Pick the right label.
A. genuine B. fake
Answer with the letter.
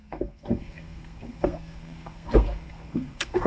B